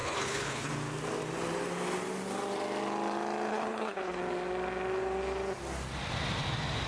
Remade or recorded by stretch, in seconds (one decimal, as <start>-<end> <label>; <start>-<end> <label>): 0.0-0.7 remade; 0.7-3.5 recorded; 3.5-4.2 remade; 4.2-6.9 recorded